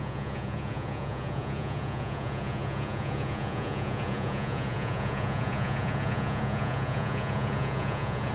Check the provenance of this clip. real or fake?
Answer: fake